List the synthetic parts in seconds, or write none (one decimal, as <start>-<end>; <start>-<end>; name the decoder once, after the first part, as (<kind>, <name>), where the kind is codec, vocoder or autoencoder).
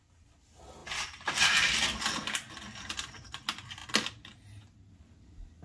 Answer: none